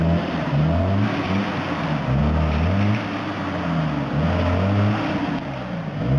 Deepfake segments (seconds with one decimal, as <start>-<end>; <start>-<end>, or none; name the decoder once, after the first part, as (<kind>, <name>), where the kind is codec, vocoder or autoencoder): none